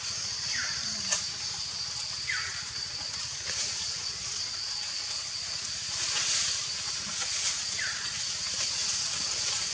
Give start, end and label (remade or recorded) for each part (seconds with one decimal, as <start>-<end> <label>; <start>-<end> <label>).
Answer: 0.0-0.5 remade; 0.5-2.2 recorded; 2.2-9.7 remade